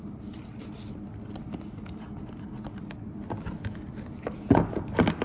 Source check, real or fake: real